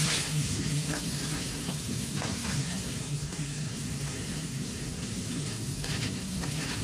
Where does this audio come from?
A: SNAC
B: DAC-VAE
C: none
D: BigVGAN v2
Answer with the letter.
A